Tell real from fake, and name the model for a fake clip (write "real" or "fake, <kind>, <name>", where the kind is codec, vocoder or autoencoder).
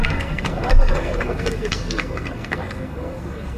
fake, codec, SNAC